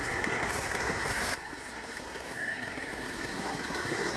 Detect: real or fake fake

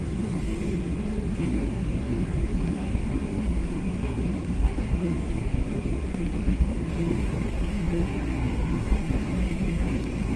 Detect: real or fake fake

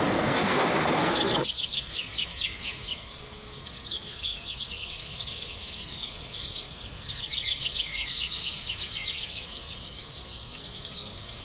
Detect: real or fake fake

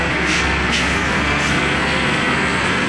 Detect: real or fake fake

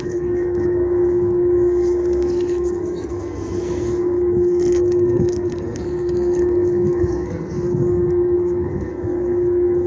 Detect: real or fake fake